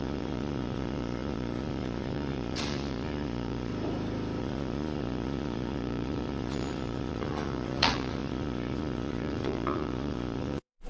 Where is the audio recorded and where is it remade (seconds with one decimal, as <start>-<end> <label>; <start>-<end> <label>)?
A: 0.0-3.7 remade; 3.7-4.4 recorded; 4.4-10.9 remade